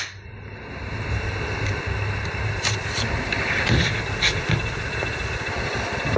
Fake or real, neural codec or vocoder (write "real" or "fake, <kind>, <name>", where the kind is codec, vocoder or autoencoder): real